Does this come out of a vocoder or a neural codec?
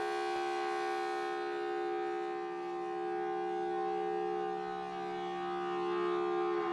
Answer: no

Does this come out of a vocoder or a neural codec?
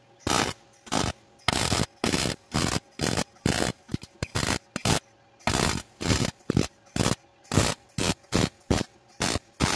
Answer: no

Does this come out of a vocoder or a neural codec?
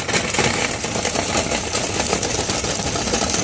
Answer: no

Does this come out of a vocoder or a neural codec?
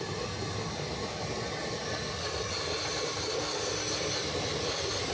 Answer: no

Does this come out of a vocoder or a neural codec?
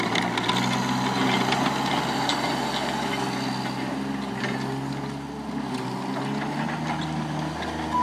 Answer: no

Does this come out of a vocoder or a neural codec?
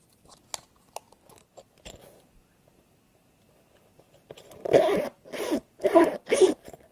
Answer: no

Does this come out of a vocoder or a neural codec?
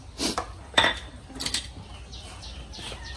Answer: no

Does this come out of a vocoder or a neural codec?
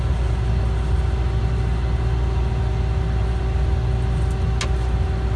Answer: no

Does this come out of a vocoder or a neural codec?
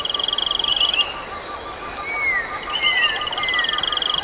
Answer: no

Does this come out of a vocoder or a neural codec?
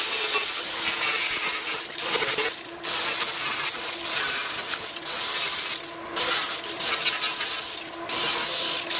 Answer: no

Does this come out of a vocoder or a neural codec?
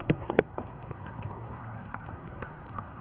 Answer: yes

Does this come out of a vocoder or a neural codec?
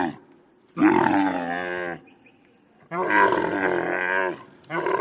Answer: no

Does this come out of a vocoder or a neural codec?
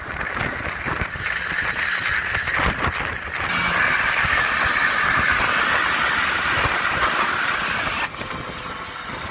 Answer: no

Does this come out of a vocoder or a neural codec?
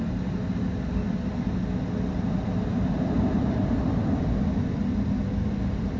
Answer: no